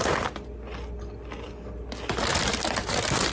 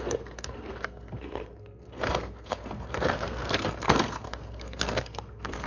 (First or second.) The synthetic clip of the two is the second